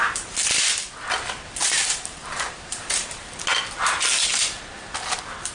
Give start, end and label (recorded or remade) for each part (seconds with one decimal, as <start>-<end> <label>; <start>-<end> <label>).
0.0-1.6 recorded; 1.6-3.4 remade; 3.4-5.5 recorded